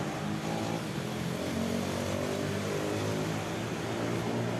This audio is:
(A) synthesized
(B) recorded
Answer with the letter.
B